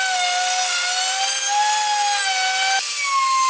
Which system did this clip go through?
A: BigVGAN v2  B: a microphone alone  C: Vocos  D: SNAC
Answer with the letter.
B